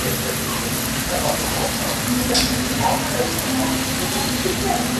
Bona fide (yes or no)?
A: yes